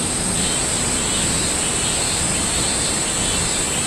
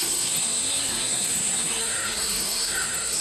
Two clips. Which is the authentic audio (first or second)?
first